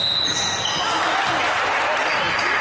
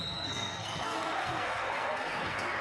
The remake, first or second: second